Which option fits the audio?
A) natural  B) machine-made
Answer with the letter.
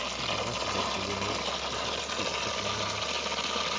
A